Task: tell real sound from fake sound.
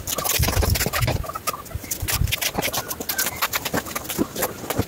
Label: real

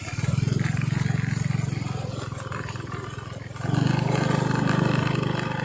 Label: real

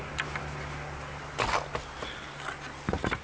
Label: real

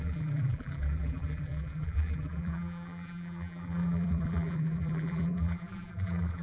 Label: fake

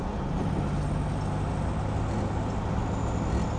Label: real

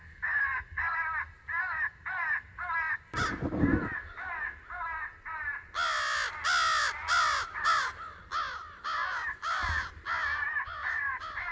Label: real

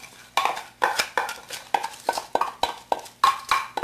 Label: real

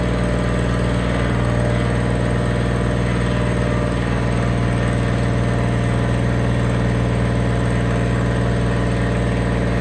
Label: real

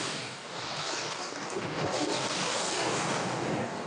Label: fake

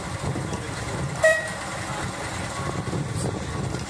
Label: real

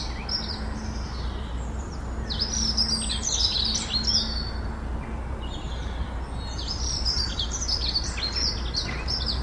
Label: real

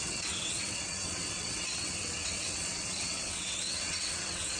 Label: fake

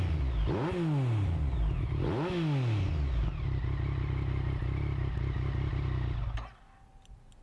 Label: real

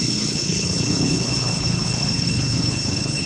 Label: fake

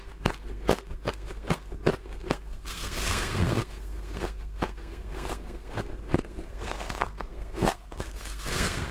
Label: fake